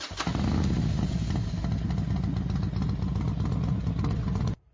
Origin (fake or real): real